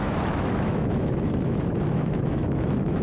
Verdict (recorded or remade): remade